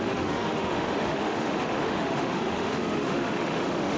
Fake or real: fake